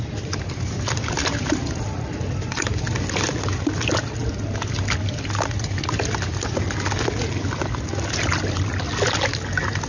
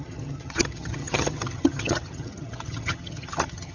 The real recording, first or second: first